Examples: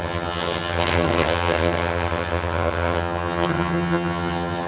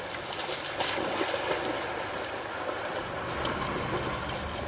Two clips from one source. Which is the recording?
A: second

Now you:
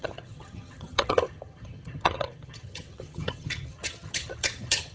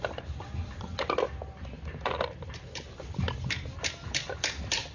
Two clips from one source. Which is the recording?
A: second